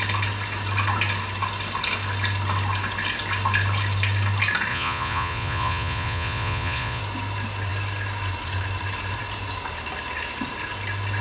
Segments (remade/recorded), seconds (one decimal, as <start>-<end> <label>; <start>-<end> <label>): 0.0-4.7 recorded; 4.7-7.0 remade; 7.0-11.2 recorded